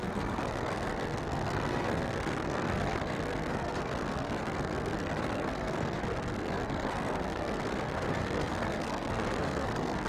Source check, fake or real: fake